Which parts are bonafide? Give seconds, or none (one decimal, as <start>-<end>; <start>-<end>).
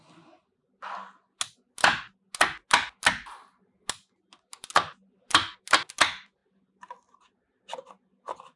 0.0-8.6